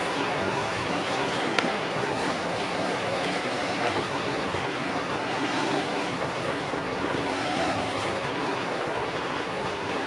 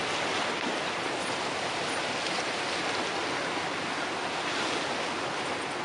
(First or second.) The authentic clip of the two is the second